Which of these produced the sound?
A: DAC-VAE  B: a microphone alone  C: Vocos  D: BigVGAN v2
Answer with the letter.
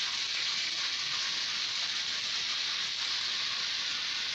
B